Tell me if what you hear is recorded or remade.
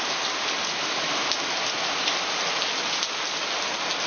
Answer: recorded